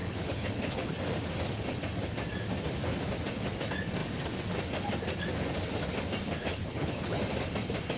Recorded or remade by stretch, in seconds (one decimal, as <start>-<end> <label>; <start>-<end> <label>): 0.0-0.9 remade; 0.9-6.5 recorded; 6.5-7.2 remade; 7.2-8.0 recorded